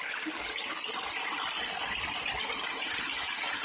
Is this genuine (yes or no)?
yes